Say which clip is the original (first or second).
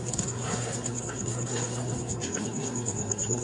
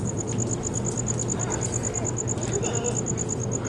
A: second